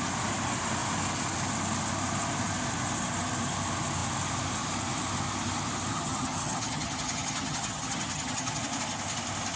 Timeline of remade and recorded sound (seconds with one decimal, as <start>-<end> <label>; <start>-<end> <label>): 0.0-5.9 recorded; 5.9-8.6 remade; 8.6-9.6 recorded